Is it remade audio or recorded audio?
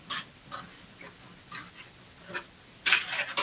recorded